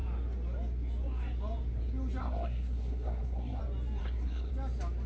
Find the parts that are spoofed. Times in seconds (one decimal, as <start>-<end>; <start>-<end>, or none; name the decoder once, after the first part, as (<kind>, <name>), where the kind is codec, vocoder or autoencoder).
2.2-3.6 (codec, SNAC); 4.0-4.5